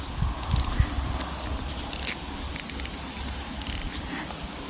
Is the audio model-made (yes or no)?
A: no